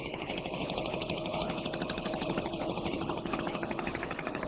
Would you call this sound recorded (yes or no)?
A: no